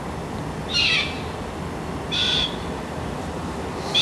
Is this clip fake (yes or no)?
no